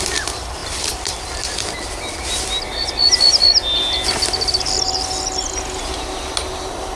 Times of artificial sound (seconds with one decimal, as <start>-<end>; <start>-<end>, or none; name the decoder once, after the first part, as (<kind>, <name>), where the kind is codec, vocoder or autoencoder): none